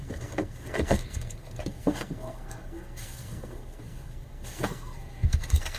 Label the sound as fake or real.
fake